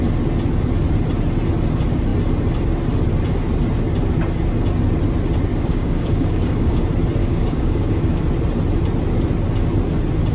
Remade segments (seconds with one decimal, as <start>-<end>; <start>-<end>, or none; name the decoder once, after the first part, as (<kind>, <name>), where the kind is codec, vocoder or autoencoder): 5.5-6.8 (codec, DAC); 7.2-8.2

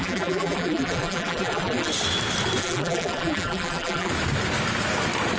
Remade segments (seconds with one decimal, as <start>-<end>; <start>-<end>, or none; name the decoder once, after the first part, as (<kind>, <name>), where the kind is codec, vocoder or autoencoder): 0.0-1.9 (vocoder, BigVGAN v2); 2.6-4.1

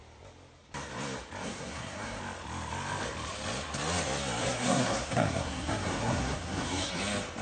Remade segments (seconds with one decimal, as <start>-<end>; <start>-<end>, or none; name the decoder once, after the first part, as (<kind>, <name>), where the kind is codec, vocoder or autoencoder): 1.4-2.2 (codec, SNAC); 4.4-6.9